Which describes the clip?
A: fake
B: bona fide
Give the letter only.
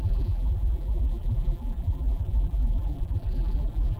A